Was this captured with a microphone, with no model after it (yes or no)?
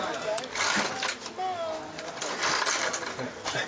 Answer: yes